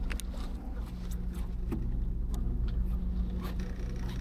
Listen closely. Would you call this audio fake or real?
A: real